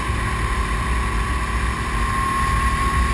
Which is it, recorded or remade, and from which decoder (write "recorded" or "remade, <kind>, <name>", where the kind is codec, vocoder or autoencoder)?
recorded